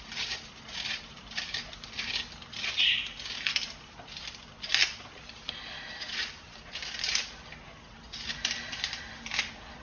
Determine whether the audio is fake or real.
real